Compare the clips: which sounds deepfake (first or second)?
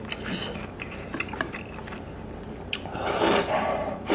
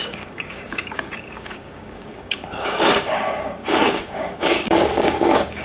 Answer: second